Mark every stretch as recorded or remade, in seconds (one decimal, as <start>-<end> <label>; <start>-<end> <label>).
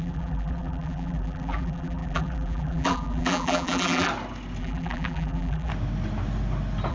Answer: 0.0-4.1 remade; 4.1-4.6 recorded; 4.6-5.7 remade; 5.7-6.9 recorded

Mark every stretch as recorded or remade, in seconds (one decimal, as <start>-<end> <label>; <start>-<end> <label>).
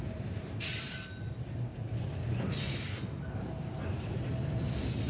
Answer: 0.0-5.1 recorded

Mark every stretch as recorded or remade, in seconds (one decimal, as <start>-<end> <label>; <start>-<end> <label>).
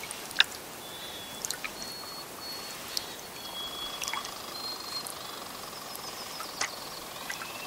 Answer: 0.0-7.7 recorded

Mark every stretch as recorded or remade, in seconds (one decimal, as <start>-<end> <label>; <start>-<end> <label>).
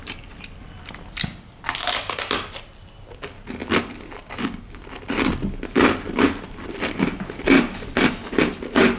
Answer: 0.0-9.0 recorded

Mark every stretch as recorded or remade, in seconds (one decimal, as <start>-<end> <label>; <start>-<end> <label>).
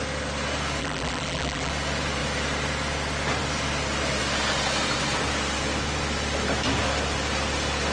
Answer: 0.0-0.8 recorded; 0.8-1.7 remade; 1.7-7.9 recorded